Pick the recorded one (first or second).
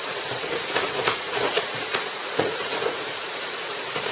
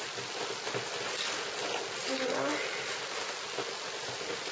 second